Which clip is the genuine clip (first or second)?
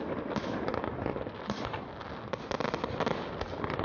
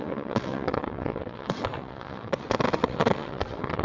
first